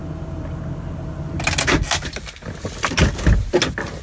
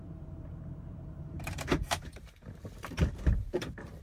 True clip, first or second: first